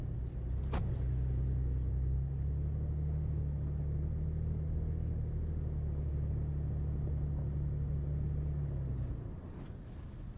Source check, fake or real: real